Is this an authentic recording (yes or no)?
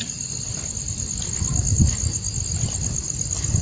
yes